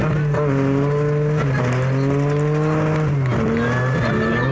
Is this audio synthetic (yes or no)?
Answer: no